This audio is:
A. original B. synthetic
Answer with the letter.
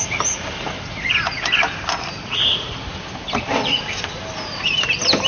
A